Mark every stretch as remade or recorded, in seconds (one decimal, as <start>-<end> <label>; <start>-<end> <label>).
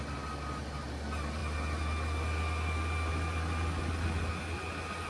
0.0-5.1 recorded